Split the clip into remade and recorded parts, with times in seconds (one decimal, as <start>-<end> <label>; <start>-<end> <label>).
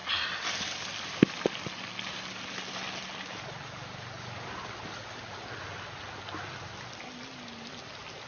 0.0-8.3 recorded